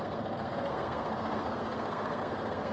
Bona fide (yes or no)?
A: no